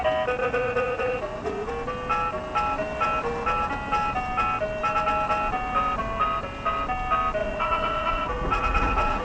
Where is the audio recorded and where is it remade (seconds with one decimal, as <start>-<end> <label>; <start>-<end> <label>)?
0.0-0.4 recorded; 0.4-1.7 remade; 1.7-7.4 recorded; 7.4-9.2 remade